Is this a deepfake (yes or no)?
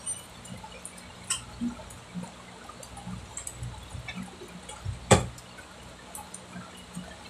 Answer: no